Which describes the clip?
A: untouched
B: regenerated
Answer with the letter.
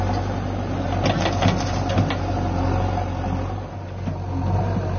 A